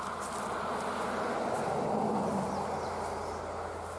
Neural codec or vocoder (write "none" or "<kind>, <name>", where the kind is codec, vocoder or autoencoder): none